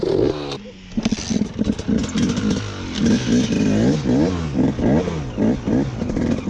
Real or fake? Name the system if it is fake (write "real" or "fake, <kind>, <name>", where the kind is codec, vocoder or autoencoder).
real